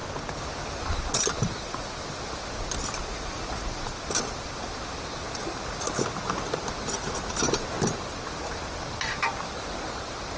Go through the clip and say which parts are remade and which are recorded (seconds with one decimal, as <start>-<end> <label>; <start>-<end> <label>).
0.0-3.1 recorded; 3.1-3.8 remade; 3.8-10.4 recorded